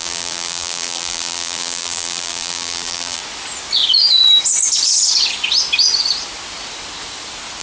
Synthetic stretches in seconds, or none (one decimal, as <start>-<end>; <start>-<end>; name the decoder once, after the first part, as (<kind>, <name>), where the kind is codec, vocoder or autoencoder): 0.0-3.2 (vocoder, BigVGAN v2)